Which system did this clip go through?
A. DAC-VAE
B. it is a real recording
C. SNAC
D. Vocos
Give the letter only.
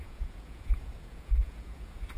D